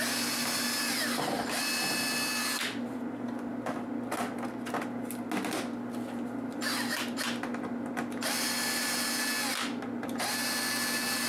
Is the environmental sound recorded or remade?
recorded